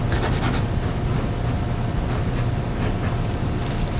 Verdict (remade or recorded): recorded